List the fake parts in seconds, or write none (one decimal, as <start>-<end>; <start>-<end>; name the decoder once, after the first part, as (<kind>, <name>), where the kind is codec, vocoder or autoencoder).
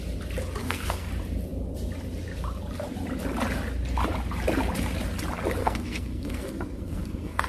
0.6-1.1 (codec, SNAC); 5.6-7.5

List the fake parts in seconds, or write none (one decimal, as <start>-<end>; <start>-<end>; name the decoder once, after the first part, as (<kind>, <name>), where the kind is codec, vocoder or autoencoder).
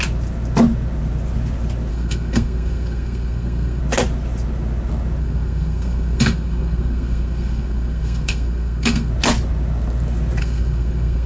1.9-3.8 (codec, SNAC); 5.2-9.1; 10.4-11.3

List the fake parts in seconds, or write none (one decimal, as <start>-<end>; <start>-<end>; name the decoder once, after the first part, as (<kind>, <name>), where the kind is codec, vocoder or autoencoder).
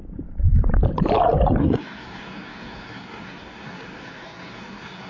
1.6-5.1 (codec, SNAC)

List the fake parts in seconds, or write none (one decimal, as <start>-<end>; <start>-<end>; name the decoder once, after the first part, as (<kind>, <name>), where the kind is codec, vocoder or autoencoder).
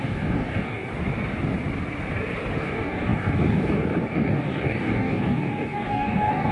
0.0-0.9 (codec, DAC); 2.6-6.5